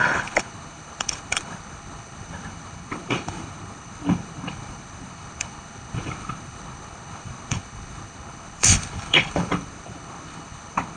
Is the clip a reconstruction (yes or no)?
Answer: yes